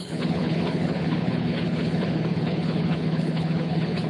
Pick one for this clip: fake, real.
fake